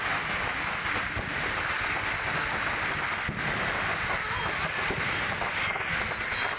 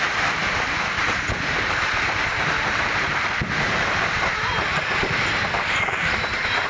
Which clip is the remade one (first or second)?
second